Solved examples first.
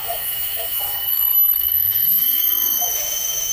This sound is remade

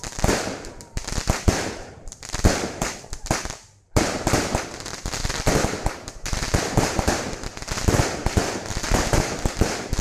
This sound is remade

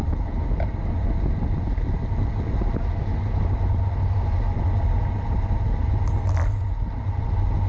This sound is recorded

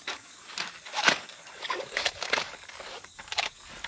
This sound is remade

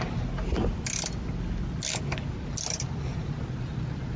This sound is recorded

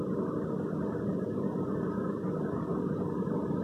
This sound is recorded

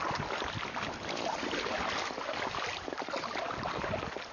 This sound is recorded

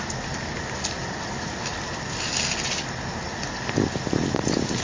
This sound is recorded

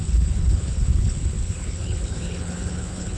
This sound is remade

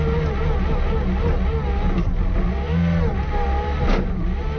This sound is recorded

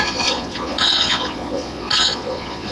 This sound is remade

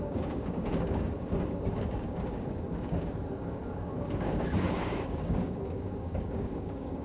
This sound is remade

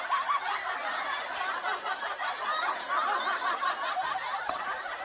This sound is recorded